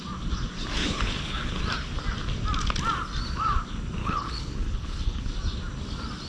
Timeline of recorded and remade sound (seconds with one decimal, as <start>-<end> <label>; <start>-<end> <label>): 0.0-0.8 recorded; 0.8-1.6 remade; 1.6-4.0 recorded; 4.0-5.3 remade; 5.3-6.3 recorded